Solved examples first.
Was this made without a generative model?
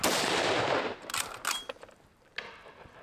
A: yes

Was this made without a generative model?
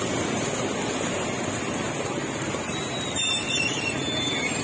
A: yes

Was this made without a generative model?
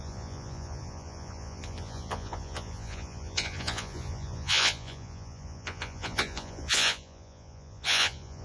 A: no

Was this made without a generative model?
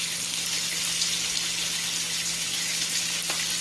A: yes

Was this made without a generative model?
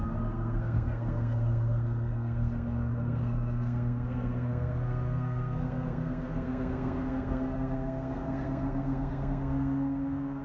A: no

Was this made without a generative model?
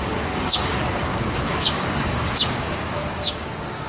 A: no